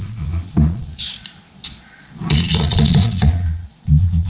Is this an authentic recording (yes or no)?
no